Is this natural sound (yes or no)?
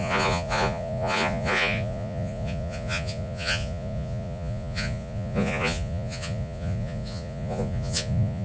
no